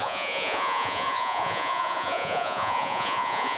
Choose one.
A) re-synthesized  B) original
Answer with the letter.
A